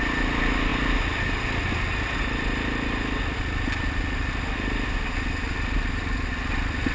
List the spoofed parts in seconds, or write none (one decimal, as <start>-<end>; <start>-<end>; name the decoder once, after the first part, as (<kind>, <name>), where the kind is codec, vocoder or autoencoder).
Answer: none